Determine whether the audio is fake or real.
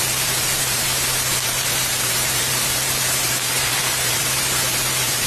fake